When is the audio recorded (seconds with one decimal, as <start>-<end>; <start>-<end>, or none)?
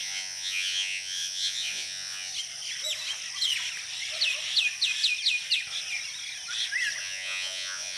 2.3-7.0